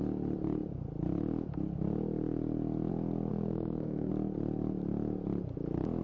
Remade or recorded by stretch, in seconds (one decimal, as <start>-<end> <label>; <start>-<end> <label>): 0.0-3.3 recorded; 3.3-4.1 remade; 4.1-6.0 recorded